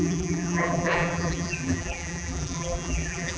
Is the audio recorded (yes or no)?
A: no